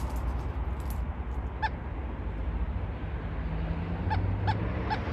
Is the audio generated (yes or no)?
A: no